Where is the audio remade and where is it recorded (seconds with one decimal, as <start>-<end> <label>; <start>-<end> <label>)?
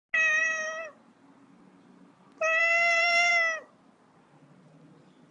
0.0-0.4 recorded; 0.4-1.2 remade; 1.2-2.6 recorded; 2.6-3.3 remade; 3.3-5.3 recorded